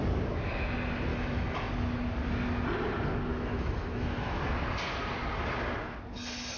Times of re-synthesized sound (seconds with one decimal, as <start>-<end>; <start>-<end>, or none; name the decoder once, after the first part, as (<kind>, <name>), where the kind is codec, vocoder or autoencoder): 1.1-1.7 (autoencoder, DAC-VAE); 3.3-4.4